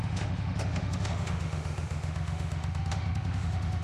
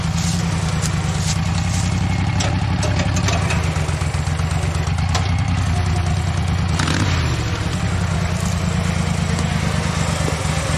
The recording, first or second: second